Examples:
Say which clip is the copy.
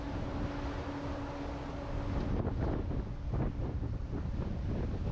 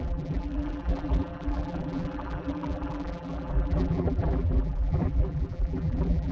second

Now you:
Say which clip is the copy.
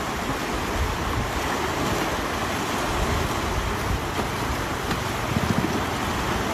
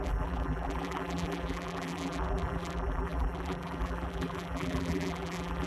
second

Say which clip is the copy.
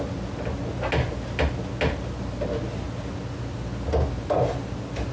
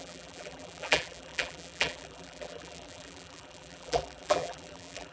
second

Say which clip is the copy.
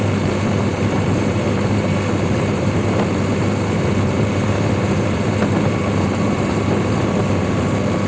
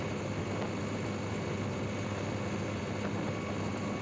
first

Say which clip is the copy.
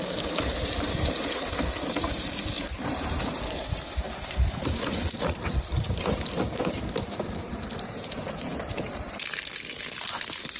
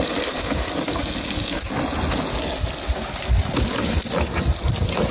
first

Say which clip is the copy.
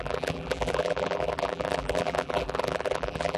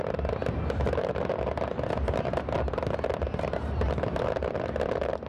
first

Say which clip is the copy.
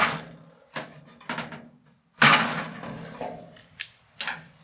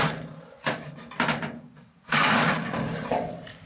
second